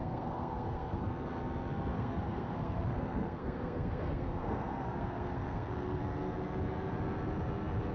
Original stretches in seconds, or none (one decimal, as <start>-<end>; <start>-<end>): 1.0-1.9; 6.0-7.9